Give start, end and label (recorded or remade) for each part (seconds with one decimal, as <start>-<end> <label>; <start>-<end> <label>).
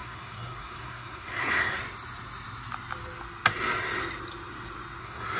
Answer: 0.0-1.8 remade; 1.8-5.0 recorded; 5.0-5.4 remade